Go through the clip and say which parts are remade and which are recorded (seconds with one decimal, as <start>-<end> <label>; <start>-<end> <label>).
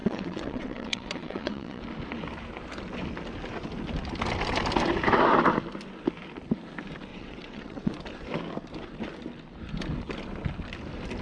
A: 0.0-1.8 remade; 1.8-7.1 recorded; 7.1-7.9 remade; 7.9-11.2 recorded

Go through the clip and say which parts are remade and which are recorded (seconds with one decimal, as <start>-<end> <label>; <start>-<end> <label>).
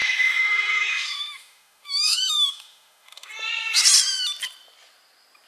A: 0.0-3.3 remade; 3.3-5.5 recorded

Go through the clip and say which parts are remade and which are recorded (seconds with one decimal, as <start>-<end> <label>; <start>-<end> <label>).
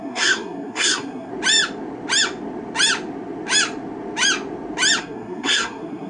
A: 0.0-1.3 remade; 1.3-5.0 recorded; 5.0-6.1 remade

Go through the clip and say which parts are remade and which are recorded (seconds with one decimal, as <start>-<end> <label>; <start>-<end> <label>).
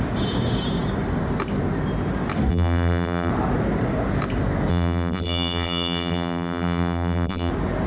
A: 0.0-2.5 recorded; 2.5-3.3 remade; 3.3-4.7 recorded; 4.7-7.5 remade; 7.5-7.9 recorded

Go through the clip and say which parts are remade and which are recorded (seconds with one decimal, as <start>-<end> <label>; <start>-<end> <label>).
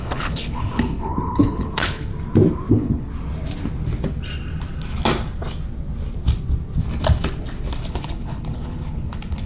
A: 0.0-2.1 remade; 2.1-2.7 recorded; 2.7-3.1 remade; 3.1-7.9 recorded; 7.9-9.5 remade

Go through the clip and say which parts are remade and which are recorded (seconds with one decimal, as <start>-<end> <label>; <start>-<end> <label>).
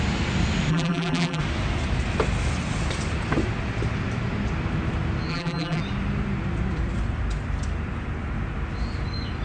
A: 0.0-0.7 recorded; 0.7-1.4 remade; 1.4-5.3 recorded; 5.3-5.8 remade; 5.8-9.4 recorded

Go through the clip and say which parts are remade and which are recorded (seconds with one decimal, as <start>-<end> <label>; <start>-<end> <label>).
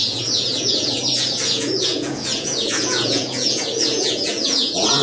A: 0.0-5.0 remade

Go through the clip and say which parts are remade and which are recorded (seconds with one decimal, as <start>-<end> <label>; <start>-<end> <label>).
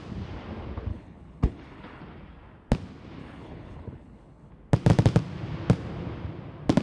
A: 0.0-0.9 recorded; 0.9-2.0 remade; 2.0-3.2 recorded; 3.2-4.5 remade; 4.5-6.8 recorded